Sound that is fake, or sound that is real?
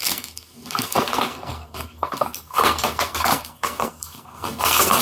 fake